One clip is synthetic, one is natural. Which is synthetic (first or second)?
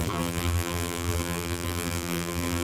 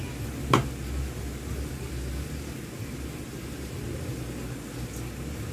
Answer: first